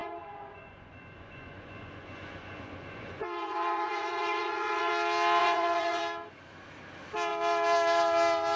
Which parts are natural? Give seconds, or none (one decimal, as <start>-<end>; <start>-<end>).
4.9-5.4; 6.0-8.6